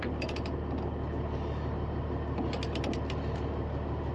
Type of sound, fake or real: real